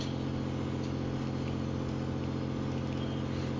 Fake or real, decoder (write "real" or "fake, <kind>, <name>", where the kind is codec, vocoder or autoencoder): real